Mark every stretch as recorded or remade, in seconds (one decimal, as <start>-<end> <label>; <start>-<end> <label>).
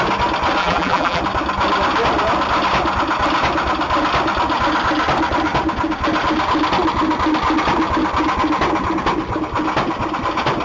0.0-0.6 recorded; 0.6-1.2 remade; 1.2-10.6 recorded